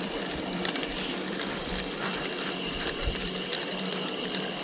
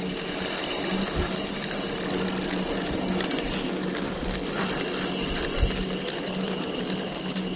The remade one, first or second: first